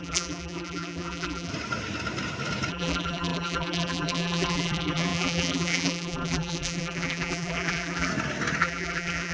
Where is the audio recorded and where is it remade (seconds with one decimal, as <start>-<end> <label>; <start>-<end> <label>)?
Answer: 0.0-1.5 remade; 1.5-2.7 recorded; 2.7-8.1 remade; 8.1-8.6 recorded; 8.6-9.3 remade